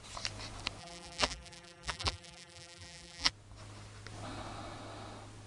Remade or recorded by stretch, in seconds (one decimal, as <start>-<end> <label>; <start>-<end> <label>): 0.0-0.8 recorded; 0.8-3.3 remade; 3.3-5.5 recorded